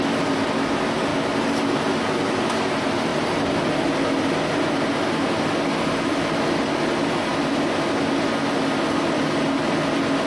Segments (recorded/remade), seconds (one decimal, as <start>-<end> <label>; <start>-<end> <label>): 0.0-3.1 recorded; 3.1-3.7 remade; 3.7-10.3 recorded